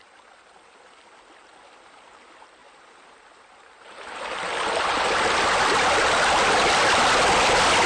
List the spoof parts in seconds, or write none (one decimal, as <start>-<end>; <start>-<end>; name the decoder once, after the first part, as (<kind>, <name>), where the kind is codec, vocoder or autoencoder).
none